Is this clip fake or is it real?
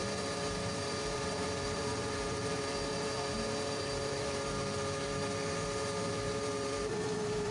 fake